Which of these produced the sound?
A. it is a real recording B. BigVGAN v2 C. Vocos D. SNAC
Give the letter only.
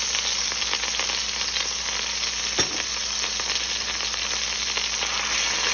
A